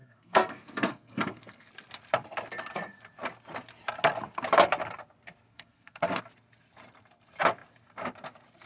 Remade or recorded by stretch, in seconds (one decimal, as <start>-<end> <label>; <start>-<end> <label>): 0.0-1.7 remade; 1.7-5.5 recorded; 5.5-6.2 remade; 6.2-8.7 recorded